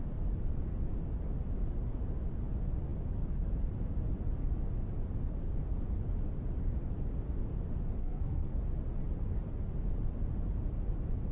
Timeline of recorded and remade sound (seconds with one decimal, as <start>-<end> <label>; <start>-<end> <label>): 0.0-8.0 recorded; 8.0-8.6 remade; 8.6-11.3 recorded